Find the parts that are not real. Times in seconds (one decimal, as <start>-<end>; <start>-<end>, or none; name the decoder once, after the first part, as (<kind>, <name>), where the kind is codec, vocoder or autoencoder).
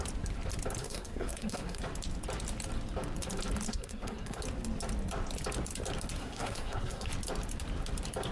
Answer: 0.8-1.8 (codec, SNAC); 3.7-4.4; 6.2-7.1